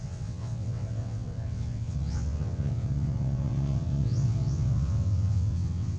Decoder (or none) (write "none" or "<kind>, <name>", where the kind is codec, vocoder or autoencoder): vocoder, WaveNeXt